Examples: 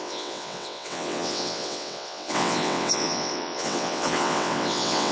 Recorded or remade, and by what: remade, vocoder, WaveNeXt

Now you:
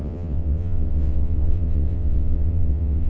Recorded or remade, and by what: remade, vocoder, WaveNeXt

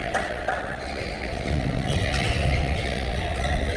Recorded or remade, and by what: remade, vocoder, WaveNeXt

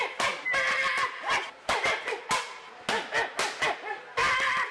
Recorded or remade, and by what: recorded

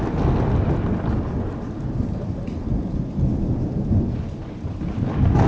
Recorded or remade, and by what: recorded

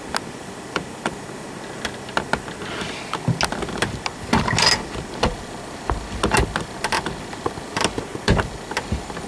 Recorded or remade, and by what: recorded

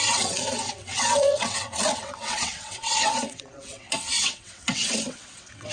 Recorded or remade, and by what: remade, vocoder, WaveNeXt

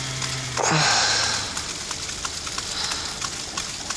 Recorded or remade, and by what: recorded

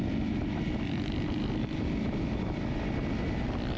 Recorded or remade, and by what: recorded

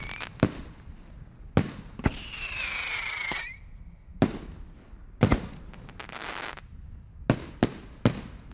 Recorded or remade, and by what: recorded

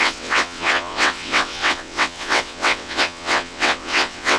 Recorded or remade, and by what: remade, vocoder, WaveNeXt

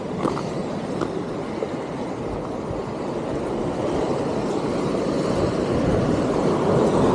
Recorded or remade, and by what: recorded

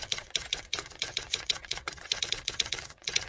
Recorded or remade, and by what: remade, vocoder, WaveNeXt